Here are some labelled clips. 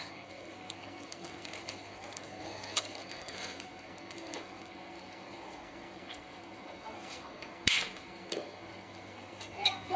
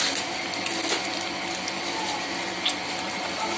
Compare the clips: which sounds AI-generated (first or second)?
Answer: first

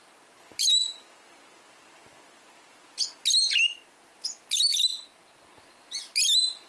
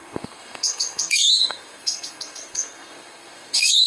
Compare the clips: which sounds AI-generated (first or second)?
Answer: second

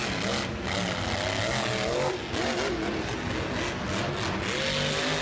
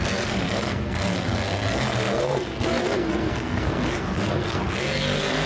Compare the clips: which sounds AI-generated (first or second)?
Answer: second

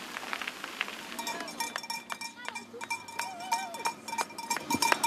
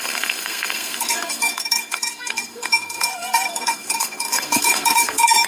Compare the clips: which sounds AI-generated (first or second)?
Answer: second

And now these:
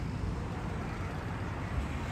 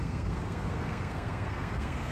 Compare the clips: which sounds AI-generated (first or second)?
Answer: second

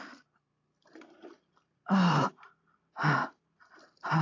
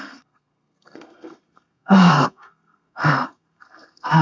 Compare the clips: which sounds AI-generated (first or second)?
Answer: second